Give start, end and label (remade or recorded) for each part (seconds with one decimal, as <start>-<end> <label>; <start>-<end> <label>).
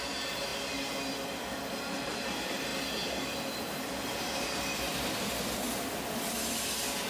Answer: 0.0-7.1 recorded